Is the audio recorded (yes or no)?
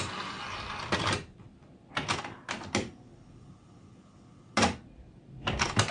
yes